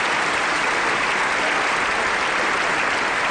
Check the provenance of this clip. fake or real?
real